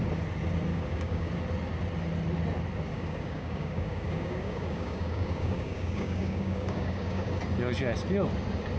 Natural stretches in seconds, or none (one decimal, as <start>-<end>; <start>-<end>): 0.0-0.7; 1.3-2.9; 7.4-8.8